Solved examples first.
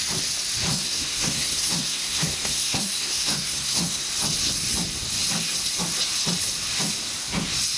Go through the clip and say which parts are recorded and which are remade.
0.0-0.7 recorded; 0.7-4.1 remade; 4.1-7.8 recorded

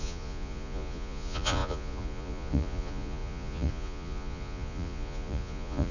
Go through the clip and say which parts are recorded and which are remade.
0.0-5.9 remade

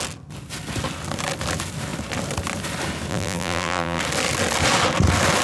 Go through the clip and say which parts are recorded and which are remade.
0.0-3.1 recorded; 3.1-4.0 remade; 4.0-5.4 recorded